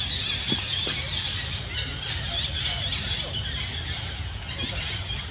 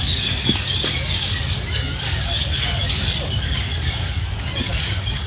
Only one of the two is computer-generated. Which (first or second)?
second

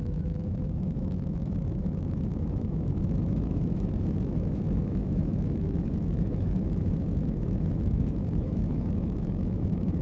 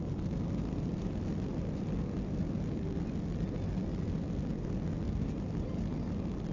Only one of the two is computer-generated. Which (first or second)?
first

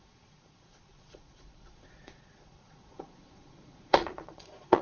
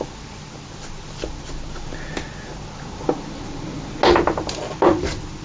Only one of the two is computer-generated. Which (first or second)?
first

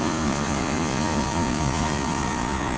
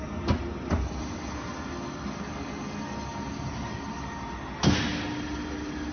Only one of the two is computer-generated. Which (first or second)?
first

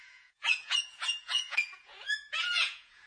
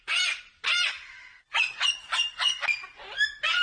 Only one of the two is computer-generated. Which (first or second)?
first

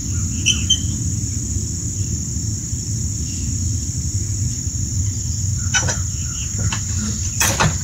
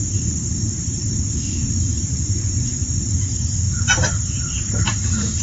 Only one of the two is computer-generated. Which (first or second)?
second